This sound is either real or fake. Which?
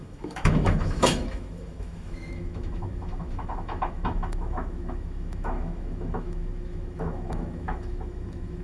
fake